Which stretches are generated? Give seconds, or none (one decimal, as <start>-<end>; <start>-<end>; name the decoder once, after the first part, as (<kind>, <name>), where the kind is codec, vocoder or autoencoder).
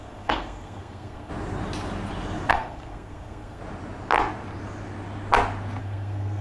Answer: 0.0-1.3 (codec, SNAC); 2.5-3.6; 5.8-6.4